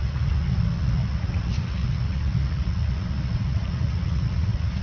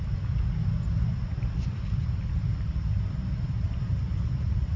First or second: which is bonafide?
second